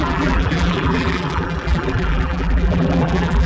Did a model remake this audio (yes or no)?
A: yes